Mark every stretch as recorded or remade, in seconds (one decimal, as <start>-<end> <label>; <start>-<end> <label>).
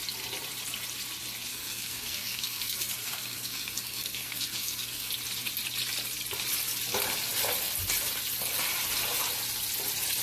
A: 0.0-1.5 recorded; 1.5-5.1 remade; 5.1-10.2 recorded